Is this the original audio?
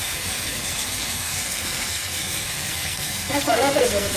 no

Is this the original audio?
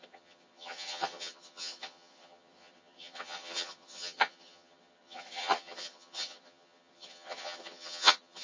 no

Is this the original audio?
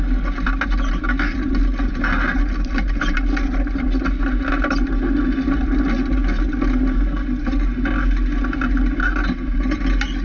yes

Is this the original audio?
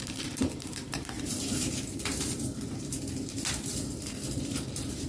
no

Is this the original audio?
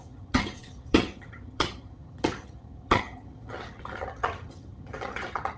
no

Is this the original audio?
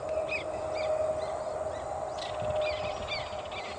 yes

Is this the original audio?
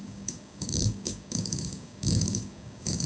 no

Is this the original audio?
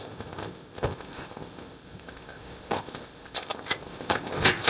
no